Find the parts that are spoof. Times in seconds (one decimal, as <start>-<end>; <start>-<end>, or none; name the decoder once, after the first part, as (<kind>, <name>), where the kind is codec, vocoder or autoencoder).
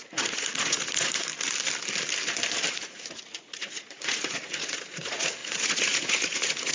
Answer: 0.0-1.3 (vocoder, Vocos); 2.7-6.7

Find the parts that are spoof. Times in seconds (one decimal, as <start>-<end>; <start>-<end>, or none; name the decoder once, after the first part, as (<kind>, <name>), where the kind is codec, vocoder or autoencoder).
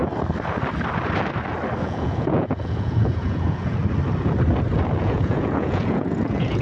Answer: 1.8-3.8 (vocoder, Vocos); 5.0-6.6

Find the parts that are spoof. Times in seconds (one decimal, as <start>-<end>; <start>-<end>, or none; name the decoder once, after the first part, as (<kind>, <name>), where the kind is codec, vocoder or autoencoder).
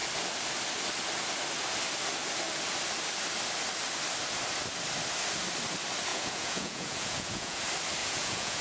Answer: 6.1-7.6 (vocoder, Vocos); 8.0-8.6